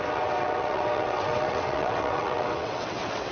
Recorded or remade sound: remade